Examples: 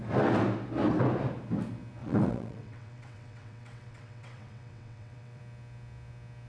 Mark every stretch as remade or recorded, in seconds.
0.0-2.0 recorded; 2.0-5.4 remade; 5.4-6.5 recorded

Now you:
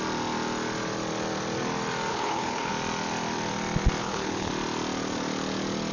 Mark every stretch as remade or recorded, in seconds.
0.0-2.1 recorded; 2.1-2.7 remade; 2.7-4.0 recorded; 4.0-4.5 remade; 4.5-5.9 recorded

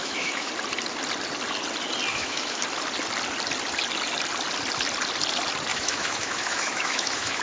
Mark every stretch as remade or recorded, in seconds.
0.0-0.5 remade; 0.5-2.1 recorded; 2.1-2.6 remade; 2.6-5.7 recorded; 5.7-7.4 remade

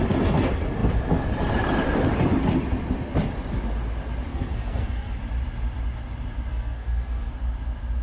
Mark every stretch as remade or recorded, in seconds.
0.0-4.3 recorded; 4.3-5.2 remade; 5.2-6.5 recorded; 6.5-7.3 remade; 7.3-8.0 recorded

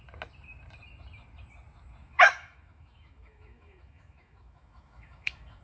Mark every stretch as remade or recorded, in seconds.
0.0-2.0 recorded; 2.0-5.6 remade

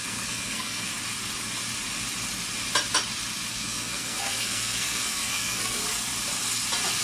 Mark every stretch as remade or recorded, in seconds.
0.0-0.9 remade; 0.9-3.5 recorded; 3.5-5.8 remade; 5.8-7.0 recorded